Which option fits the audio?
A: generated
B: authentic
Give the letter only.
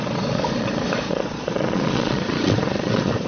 A